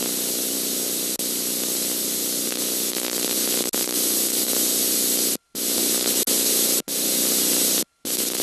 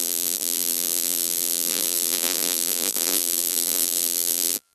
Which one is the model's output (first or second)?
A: second